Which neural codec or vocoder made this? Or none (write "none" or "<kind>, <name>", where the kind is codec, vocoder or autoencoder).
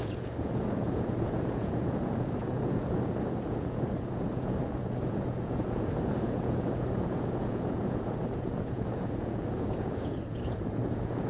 vocoder, Vocos